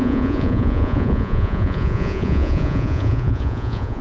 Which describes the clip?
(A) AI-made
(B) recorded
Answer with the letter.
A